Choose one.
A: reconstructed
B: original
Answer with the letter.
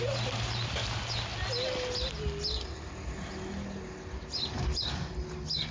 B